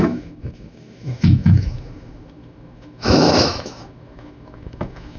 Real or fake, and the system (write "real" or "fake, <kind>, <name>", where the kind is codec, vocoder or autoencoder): fake, autoencoder, DAC-VAE